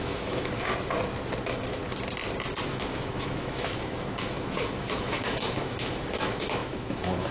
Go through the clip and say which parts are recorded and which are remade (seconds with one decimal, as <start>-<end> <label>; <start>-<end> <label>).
0.0-0.7 remade; 0.7-1.4 recorded; 1.4-1.8 remade; 1.8-2.7 recorded; 2.7-7.3 remade